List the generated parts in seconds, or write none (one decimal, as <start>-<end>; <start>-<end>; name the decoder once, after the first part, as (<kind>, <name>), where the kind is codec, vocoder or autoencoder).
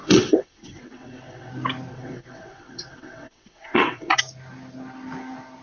0.0-1.5 (vocoder, WaveNeXt); 1.9-4.2